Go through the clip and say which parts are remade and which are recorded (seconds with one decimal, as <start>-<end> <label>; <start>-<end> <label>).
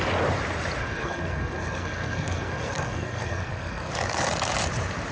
0.0-0.8 recorded; 0.8-3.9 remade; 3.9-5.1 recorded